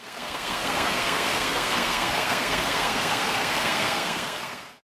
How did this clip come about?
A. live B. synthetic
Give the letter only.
B